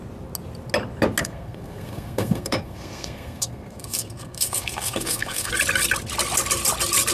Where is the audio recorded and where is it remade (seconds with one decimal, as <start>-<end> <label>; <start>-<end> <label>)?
0.0-1.2 recorded; 1.2-5.5 remade; 5.5-7.1 recorded